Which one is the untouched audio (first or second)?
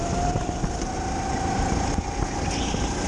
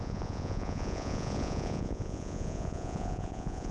first